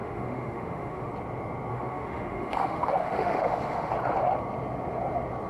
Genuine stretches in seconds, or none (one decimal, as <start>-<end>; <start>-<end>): 1.1-1.7; 3.9-5.5